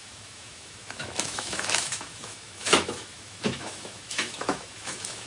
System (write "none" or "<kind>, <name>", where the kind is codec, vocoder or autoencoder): autoencoder, DAC-VAE